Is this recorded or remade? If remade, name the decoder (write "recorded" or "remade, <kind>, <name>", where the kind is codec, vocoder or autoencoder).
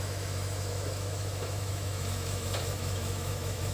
remade, autoencoder, DAC-VAE